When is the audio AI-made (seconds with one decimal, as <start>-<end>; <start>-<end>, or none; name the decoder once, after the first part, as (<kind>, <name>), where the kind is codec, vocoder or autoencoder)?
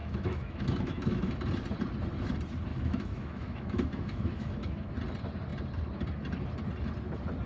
0.0-1.3 (autoencoder, DAC-VAE); 2.7-4.9